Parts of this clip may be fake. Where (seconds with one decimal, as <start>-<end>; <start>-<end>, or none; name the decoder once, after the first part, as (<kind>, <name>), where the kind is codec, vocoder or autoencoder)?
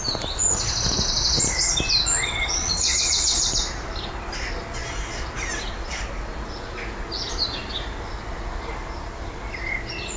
2.2-3.5 (vocoder, WaveNeXt)